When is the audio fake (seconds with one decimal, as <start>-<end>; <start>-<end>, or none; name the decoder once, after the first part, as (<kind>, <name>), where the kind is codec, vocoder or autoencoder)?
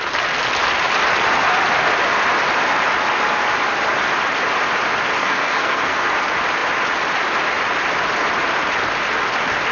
5.2-6.1 (codec, SNAC)